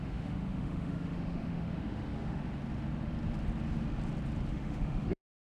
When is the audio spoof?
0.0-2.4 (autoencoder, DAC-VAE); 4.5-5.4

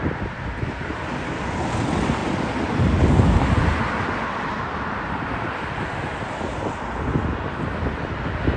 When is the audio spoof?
none

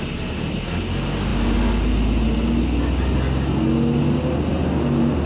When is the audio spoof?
none

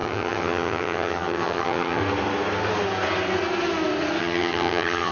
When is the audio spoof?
0.0-2.0 (vocoder, HiFi-GAN); 4.2-5.1

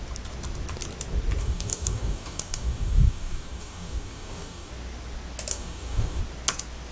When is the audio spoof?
1.4-4.7 (codec, DAC); 5.5-6.2